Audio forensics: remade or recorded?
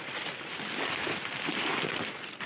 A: recorded